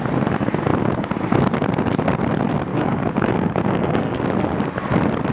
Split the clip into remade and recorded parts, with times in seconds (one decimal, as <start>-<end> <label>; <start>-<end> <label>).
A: 0.0-2.7 recorded; 2.7-4.2 remade; 4.2-5.3 recorded